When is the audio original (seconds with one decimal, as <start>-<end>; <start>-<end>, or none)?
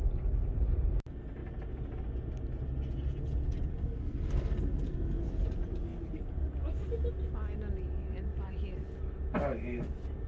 0.0-3.7; 5.2-10.3